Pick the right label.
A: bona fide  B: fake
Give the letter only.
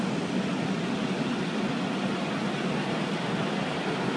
A